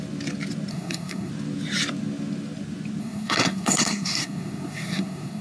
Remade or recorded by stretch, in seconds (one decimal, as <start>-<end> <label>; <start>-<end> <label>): 0.0-0.7 recorded; 0.7-1.3 remade; 1.3-3.0 recorded; 3.0-5.4 remade